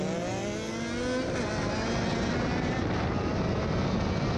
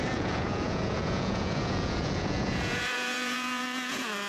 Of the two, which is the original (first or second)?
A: first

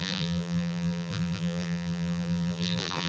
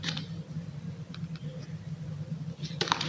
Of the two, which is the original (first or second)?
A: second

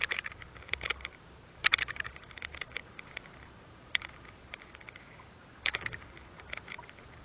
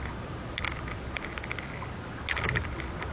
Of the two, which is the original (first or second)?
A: second